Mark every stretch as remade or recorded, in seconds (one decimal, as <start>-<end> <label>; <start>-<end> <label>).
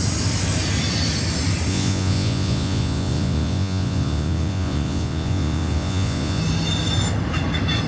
0.0-1.7 recorded; 1.7-6.4 remade; 6.4-7.9 recorded